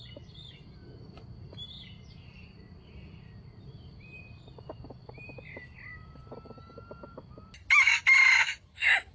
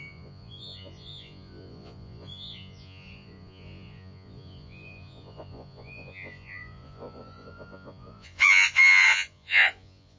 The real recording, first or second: first